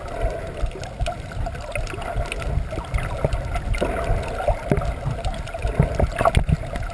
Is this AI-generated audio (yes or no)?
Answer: no